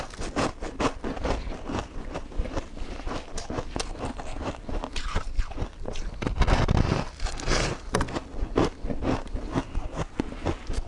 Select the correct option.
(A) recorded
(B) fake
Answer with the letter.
A